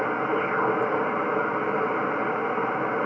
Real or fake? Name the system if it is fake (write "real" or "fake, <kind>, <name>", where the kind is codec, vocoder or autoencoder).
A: real